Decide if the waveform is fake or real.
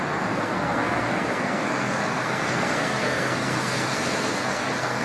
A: fake